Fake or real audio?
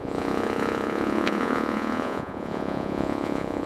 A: fake